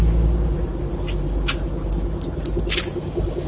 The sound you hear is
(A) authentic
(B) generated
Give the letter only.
A